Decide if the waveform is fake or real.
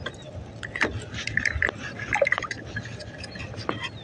real